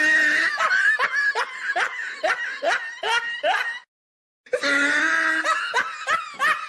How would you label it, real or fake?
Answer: real